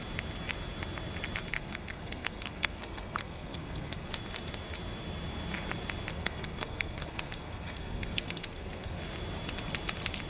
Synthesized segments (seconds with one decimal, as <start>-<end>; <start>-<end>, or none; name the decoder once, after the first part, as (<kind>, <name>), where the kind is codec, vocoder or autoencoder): 1.5-4.1 (codec, SNAC); 6.1-9.0